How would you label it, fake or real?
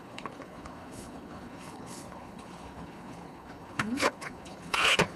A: fake